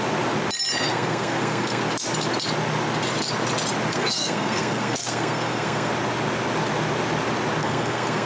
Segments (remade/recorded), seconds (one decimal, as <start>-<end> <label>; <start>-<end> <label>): 0.0-0.9 recorded; 0.9-1.8 remade; 1.8-3.9 recorded; 3.9-5.9 remade; 5.9-7.6 recorded; 7.6-8.3 remade